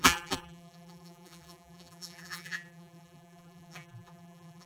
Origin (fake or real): fake